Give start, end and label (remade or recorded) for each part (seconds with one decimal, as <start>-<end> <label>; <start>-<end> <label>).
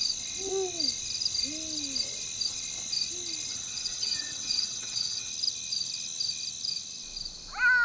0.0-3.5 recorded; 3.5-5.3 remade; 5.3-7.8 recorded